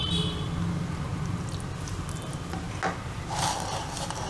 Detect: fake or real real